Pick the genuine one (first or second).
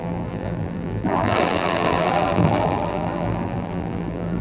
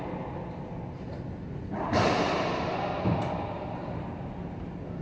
second